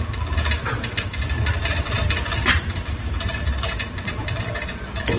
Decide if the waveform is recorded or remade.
recorded